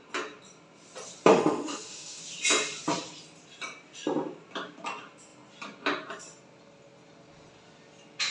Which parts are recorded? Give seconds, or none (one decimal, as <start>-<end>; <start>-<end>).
0.0-1.3; 2.2-8.3